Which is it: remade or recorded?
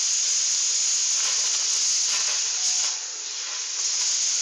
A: recorded